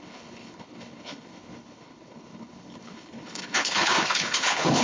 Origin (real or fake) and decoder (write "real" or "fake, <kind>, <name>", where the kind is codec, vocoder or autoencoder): fake, codec, HILCodec